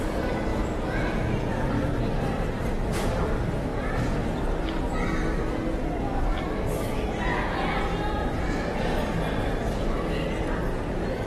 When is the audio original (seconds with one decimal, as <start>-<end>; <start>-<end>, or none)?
0.0-0.5; 1.7-7.3; 8.8-11.3